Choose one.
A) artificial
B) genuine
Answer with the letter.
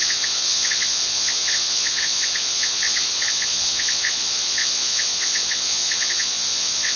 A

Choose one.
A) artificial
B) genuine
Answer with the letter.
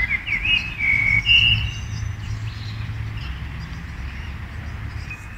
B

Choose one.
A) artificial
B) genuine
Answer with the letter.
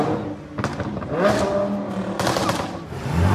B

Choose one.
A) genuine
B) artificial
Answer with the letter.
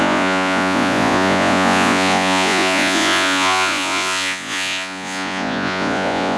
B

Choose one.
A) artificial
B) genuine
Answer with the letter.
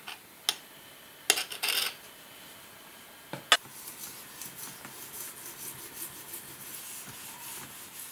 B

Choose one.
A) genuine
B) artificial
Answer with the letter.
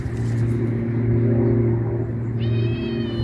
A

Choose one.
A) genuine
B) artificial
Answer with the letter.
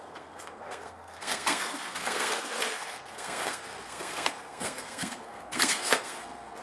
B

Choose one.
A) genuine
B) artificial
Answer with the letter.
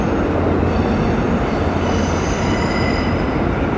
B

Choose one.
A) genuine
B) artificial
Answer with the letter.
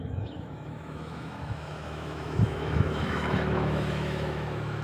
B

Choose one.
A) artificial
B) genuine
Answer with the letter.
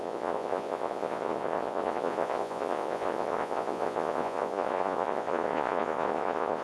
A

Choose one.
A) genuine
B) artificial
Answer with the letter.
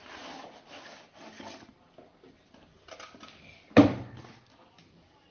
A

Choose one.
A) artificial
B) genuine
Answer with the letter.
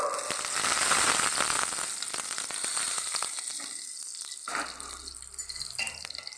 B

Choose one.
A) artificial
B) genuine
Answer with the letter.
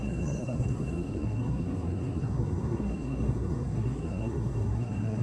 A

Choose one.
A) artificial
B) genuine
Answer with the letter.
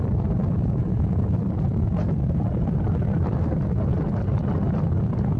B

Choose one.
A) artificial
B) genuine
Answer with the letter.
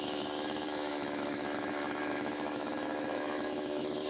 A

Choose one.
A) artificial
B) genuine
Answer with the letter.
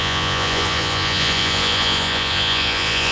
A